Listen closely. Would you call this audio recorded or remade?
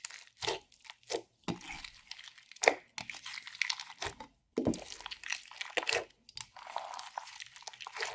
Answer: recorded